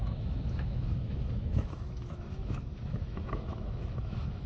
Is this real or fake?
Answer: fake